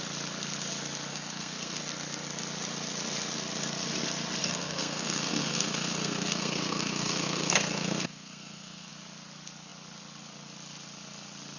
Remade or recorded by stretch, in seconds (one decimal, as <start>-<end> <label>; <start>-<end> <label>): 0.0-1.1 recorded; 1.1-1.8 remade; 1.8-4.4 recorded; 4.4-8.9 remade; 8.9-11.6 recorded